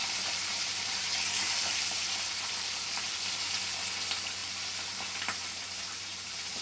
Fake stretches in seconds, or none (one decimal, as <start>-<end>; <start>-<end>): 0.0-3.5; 4.4-6.6

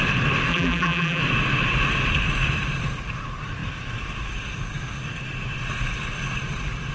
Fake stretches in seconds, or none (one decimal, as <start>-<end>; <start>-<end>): 0.5-1.2

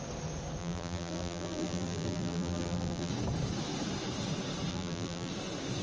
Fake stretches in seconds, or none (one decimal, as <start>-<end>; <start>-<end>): 0.6-3.1; 4.7-5.3